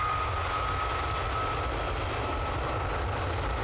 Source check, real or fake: real